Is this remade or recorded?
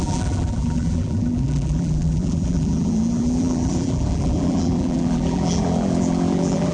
remade